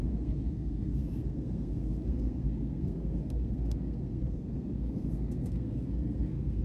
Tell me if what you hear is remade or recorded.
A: remade